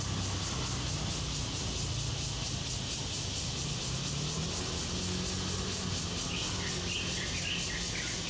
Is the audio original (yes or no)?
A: yes